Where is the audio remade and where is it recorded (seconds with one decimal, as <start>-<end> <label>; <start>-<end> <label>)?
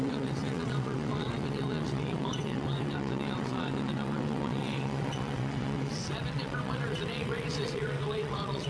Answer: 0.0-8.7 remade